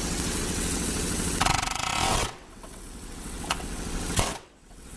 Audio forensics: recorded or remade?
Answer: remade